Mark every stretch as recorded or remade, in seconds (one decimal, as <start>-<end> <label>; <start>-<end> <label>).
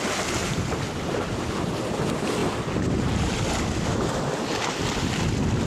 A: 0.0-0.4 recorded; 0.4-1.8 remade; 1.8-5.7 recorded